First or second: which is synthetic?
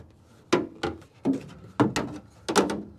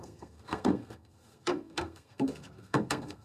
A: second